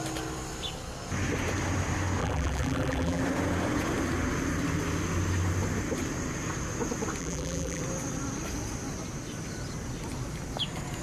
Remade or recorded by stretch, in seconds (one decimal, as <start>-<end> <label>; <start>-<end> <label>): 0.0-2.2 recorded; 2.2-3.2 remade; 3.2-7.2 recorded; 7.2-7.8 remade; 7.8-11.0 recorded